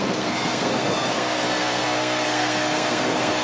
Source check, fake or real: fake